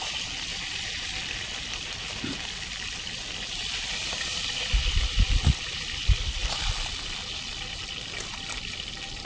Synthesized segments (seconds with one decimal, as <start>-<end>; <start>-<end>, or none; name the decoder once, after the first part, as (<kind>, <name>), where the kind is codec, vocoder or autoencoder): none